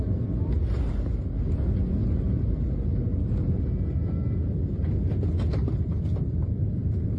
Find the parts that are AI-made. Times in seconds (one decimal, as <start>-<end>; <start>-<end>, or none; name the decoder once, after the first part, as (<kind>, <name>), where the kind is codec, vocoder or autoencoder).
none